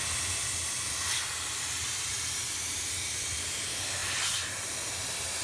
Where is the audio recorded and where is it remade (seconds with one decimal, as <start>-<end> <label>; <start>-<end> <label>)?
0.0-5.4 recorded